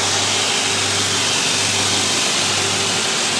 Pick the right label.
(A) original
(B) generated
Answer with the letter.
A